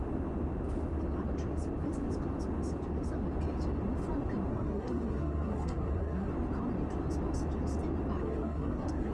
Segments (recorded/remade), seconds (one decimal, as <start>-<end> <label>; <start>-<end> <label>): 0.0-4.5 recorded; 4.5-6.3 remade; 6.3-8.2 recorded; 8.2-9.1 remade